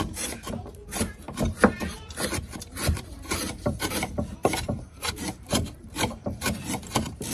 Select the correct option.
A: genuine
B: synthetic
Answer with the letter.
B